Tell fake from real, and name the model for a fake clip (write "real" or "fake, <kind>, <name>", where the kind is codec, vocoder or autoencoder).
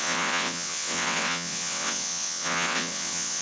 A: fake, vocoder, WaveNeXt